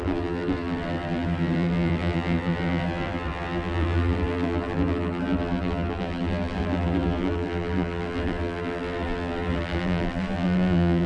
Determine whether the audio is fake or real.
fake